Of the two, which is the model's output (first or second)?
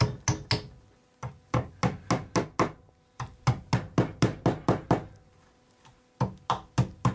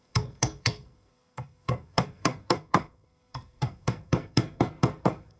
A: second